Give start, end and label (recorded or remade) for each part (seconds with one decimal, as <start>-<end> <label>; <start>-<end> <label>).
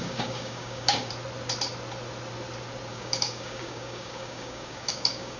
0.0-1.1 remade; 1.1-2.9 recorded; 2.9-5.4 remade